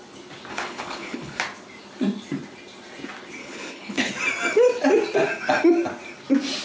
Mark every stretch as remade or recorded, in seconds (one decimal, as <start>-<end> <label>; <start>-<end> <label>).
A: 0.0-0.5 recorded; 0.5-1.4 remade; 1.4-3.4 recorded; 3.4-4.1 remade; 4.1-6.6 recorded